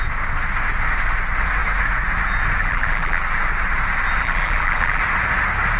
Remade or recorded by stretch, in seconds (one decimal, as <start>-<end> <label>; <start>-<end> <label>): 0.0-2.6 recorded; 2.6-3.2 remade; 3.2-4.2 recorded; 4.2-5.0 remade; 5.0-5.8 recorded